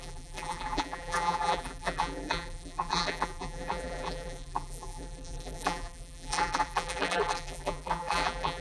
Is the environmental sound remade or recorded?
remade